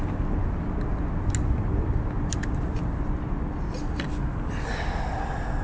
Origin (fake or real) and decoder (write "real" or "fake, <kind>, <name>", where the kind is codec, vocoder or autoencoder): real